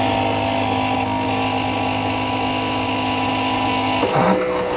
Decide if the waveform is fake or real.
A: real